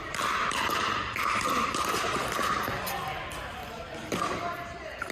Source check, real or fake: real